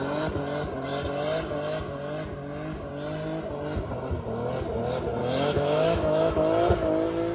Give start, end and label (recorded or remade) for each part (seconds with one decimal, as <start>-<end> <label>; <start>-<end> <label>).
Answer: 0.0-5.2 recorded; 5.2-6.4 remade; 6.4-7.3 recorded